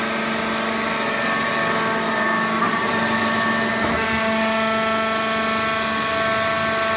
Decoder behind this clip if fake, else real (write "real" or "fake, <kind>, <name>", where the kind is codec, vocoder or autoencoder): real